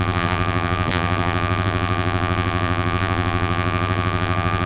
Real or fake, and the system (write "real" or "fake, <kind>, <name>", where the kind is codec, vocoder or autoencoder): fake, vocoder, BigVGAN v2